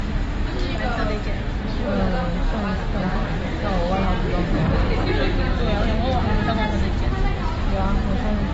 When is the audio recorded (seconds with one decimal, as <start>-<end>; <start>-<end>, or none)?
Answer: 0.0-8.5